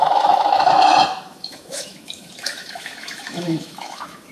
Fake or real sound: fake